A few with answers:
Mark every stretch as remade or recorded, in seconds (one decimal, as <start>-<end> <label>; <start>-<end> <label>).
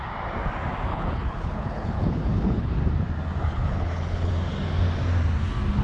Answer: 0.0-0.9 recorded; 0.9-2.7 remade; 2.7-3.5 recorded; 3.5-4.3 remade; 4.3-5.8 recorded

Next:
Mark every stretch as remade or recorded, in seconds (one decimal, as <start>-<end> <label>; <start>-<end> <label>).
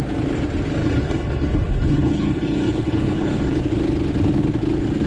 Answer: 0.0-0.8 recorded; 0.8-3.6 remade; 3.6-5.1 recorded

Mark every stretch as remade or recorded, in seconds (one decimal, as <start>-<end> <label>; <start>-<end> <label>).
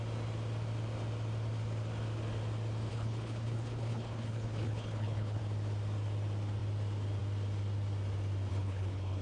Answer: 0.0-2.9 recorded; 2.9-5.4 remade; 5.4-8.5 recorded; 8.5-9.2 remade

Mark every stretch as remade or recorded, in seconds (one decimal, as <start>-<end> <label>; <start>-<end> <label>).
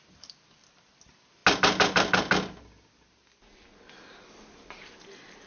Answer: 0.0-5.5 recorded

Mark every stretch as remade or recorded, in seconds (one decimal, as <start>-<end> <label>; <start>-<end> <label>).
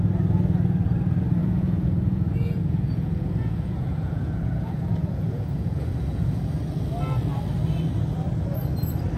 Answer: 0.0-1.4 recorded; 1.4-6.4 remade; 6.4-9.2 recorded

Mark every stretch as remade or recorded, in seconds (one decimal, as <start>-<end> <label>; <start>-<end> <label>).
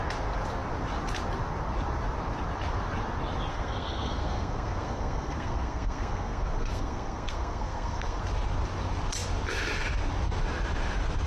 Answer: 0.0-3.5 recorded; 3.5-8.2 remade; 8.2-11.3 recorded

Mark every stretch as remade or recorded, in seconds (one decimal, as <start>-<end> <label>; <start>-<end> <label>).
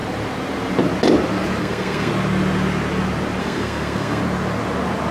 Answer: 0.0-1.6 recorded; 1.6-2.1 remade; 2.1-3.4 recorded; 3.4-4.2 remade; 4.2-5.1 recorded